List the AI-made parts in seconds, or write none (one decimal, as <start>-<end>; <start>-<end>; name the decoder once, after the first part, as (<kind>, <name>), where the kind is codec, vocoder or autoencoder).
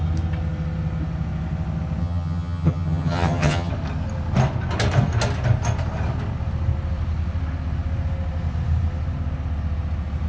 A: 2.0-3.7 (vocoder, HiFi-GAN)